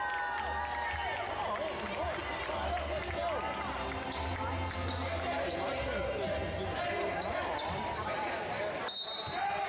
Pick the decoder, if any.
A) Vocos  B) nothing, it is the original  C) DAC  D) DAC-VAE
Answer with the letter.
B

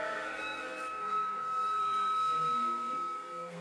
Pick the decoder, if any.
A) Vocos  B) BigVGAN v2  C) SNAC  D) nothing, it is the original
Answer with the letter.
C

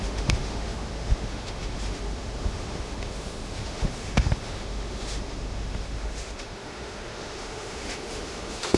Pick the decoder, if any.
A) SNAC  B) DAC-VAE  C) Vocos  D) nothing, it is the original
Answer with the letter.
B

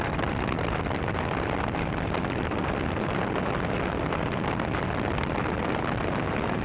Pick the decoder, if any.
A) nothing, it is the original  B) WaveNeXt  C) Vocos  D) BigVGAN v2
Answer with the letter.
D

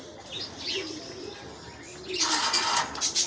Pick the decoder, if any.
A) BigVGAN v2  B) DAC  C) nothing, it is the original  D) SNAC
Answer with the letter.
A